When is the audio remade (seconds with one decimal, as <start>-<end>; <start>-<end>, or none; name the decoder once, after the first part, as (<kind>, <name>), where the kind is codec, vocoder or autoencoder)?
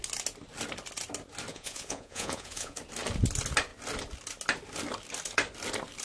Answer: 1.5-2.8 (vocoder, Vocos)